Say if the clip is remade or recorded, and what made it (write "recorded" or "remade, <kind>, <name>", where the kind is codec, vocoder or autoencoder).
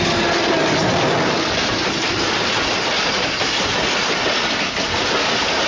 recorded